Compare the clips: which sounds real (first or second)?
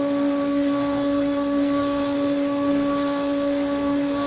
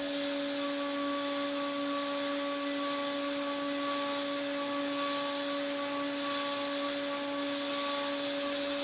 second